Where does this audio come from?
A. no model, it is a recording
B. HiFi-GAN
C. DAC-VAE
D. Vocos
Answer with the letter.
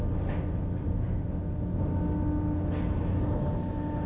A